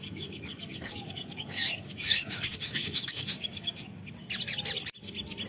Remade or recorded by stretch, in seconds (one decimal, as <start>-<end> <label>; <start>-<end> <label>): 0.0-4.0 remade; 4.0-5.5 recorded

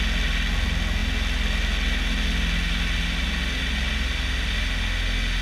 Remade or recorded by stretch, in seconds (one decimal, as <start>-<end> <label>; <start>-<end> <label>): 0.0-5.4 recorded

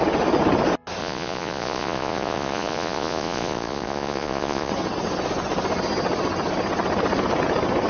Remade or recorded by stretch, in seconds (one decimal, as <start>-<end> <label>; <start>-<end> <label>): 0.0-1.0 recorded; 1.0-4.7 remade; 4.7-7.9 recorded